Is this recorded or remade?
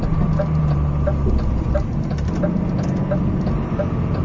recorded